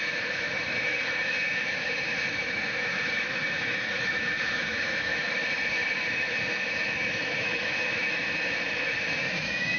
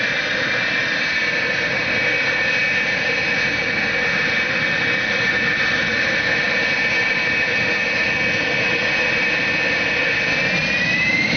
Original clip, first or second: second